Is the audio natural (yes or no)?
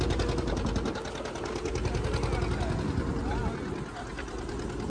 yes